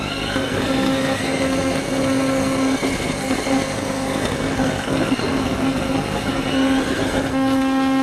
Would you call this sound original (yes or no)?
no